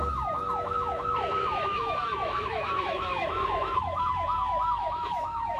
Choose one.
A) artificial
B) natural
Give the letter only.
A